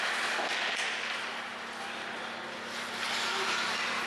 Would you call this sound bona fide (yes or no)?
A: yes